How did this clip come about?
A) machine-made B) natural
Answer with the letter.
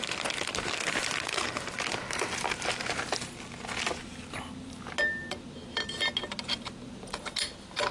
B